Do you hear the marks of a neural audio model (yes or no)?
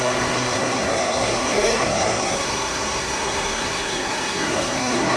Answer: yes